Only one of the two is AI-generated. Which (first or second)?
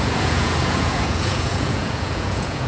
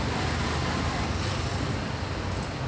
first